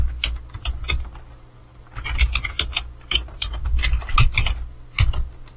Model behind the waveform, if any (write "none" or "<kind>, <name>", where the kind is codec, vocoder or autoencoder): none